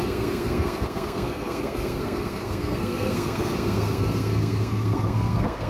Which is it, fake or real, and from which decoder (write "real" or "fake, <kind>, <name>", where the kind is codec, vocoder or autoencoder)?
fake, codec, SNAC